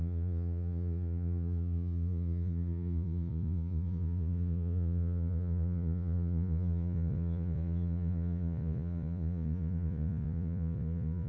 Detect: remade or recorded remade